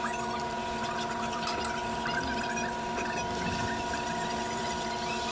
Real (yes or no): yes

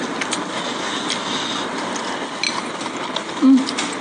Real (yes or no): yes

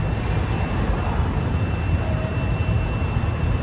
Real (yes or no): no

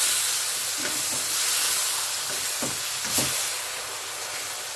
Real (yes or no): yes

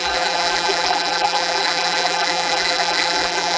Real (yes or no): no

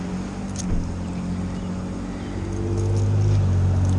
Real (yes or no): yes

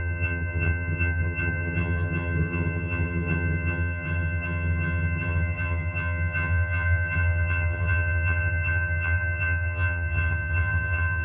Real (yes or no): no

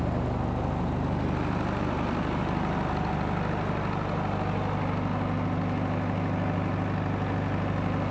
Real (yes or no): yes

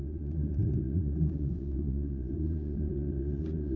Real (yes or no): no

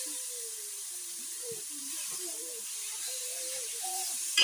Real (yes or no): no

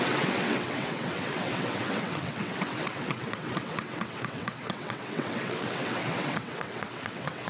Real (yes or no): no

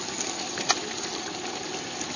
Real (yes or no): yes